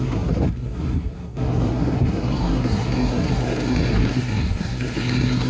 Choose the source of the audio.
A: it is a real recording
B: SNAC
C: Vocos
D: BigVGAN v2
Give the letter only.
B